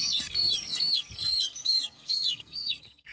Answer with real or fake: fake